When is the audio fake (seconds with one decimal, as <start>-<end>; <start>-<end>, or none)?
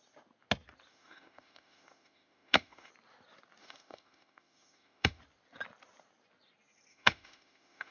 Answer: 0.9-2.9; 3.6-5.2; 6.9-7.9